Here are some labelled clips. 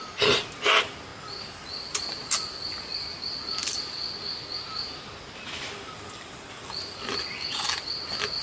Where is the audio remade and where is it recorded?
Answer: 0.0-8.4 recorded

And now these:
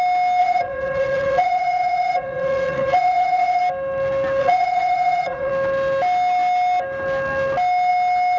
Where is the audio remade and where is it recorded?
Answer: 0.0-0.4 recorded; 0.4-3.6 remade; 3.6-4.4 recorded; 4.4-5.5 remade; 5.5-8.4 recorded

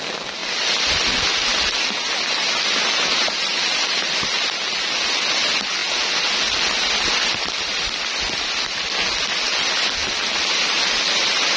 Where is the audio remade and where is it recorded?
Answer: 0.0-11.6 recorded